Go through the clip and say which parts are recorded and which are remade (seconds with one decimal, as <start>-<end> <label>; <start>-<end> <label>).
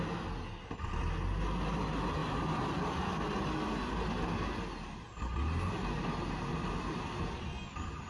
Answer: 0.0-8.1 recorded